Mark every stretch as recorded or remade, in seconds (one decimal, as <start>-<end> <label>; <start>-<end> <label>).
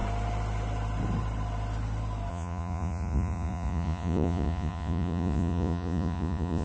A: 0.0-2.3 recorded; 2.3-6.6 remade